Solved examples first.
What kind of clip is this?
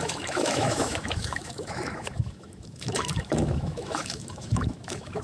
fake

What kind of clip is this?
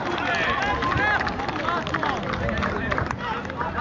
real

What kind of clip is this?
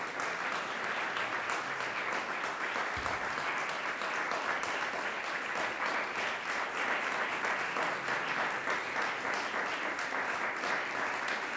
real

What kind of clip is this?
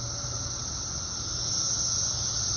real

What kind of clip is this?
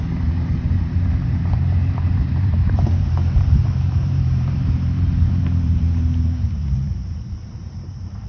fake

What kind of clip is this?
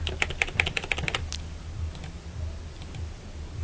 real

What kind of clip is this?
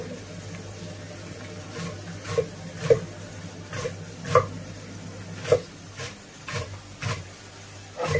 real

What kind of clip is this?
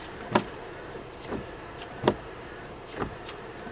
fake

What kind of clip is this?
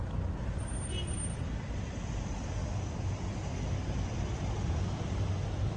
real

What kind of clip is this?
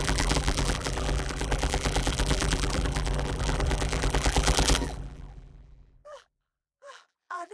fake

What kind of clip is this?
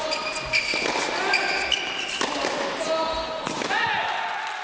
real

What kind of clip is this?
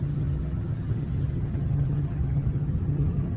fake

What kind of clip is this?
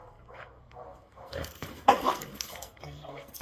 fake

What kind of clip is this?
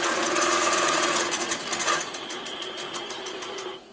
fake